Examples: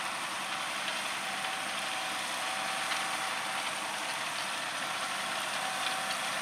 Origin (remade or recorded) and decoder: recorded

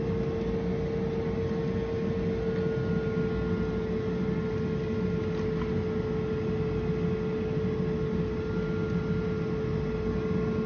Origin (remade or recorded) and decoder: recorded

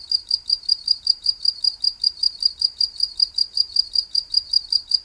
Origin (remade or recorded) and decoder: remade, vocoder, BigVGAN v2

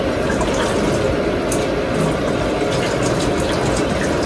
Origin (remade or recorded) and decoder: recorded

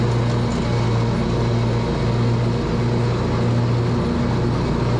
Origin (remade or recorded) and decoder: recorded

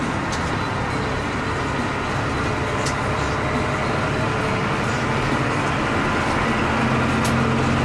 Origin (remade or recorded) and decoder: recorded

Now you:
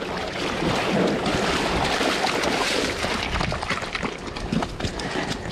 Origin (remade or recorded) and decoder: recorded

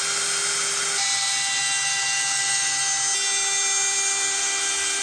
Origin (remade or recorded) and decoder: recorded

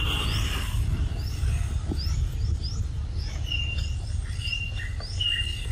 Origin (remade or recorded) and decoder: recorded